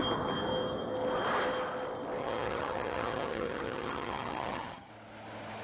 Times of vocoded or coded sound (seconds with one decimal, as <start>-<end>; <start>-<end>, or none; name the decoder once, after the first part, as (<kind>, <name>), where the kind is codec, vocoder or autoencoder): 2.2-4.9 (vocoder, HiFi-GAN)